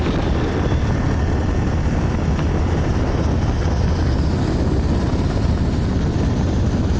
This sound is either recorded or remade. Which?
recorded